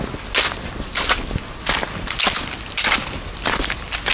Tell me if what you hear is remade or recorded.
recorded